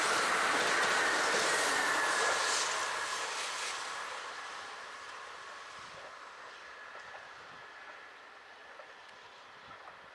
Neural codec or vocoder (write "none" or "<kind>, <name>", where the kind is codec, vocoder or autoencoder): none